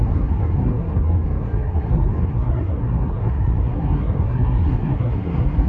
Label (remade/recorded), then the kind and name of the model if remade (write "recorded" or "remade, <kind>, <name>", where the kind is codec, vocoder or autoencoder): remade, codec, SNAC